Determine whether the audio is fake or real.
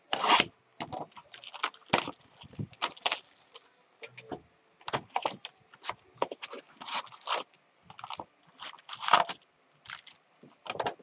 real